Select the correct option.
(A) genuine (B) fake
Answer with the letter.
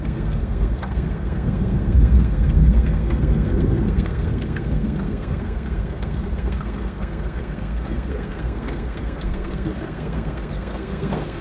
B